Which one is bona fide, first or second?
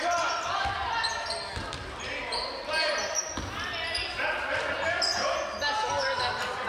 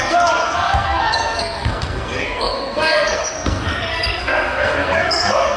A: first